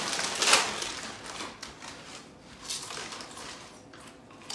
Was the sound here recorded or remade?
recorded